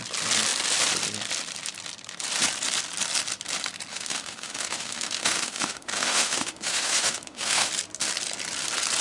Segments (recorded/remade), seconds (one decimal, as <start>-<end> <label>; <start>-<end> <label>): 0.0-3.9 recorded; 3.9-7.7 remade; 7.7-9.0 recorded